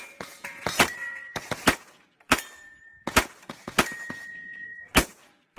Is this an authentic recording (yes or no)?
no